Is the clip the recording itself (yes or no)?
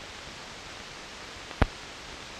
yes